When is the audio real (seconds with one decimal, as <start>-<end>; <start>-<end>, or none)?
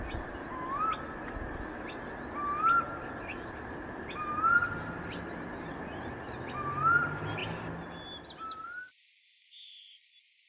0.0-10.5